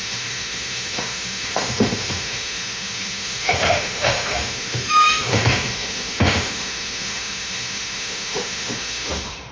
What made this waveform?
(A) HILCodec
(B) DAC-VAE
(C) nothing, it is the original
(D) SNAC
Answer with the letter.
B